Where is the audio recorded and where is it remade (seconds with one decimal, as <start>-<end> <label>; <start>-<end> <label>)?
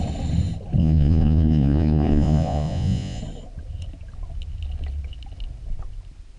0.0-0.8 recorded; 0.8-3.2 remade; 3.2-6.4 recorded